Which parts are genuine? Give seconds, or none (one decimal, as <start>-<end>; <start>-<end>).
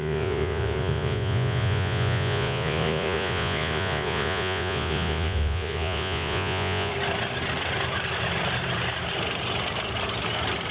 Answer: 6.9-10.7